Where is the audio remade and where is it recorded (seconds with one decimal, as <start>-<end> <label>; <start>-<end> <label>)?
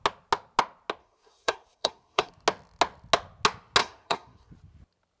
0.0-1.0 recorded; 1.0-2.3 remade; 2.3-3.8 recorded; 3.8-4.5 remade; 4.5-5.2 recorded